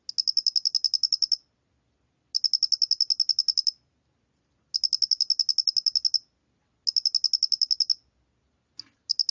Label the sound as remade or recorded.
recorded